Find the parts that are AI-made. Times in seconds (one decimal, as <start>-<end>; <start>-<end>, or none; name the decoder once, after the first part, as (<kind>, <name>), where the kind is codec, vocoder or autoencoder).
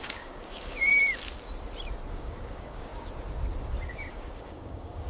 0.0-0.9 (codec, DAC); 2.1-2.9; 4.1-5.1